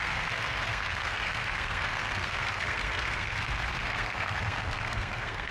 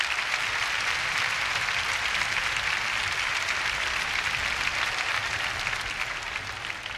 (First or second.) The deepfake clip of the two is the first